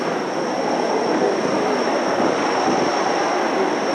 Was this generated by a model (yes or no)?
no